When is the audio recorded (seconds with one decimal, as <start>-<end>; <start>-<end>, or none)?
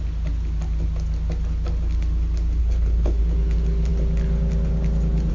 0.0-2.6; 3.2-5.3